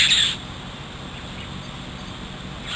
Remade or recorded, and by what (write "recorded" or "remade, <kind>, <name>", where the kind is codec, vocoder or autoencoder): recorded